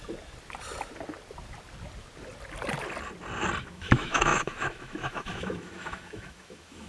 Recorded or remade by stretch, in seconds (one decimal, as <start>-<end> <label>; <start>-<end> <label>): 0.0-3.6 recorded; 3.6-6.9 remade